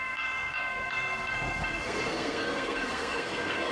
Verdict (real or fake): fake